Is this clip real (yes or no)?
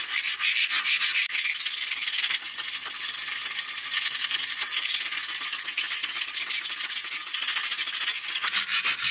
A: yes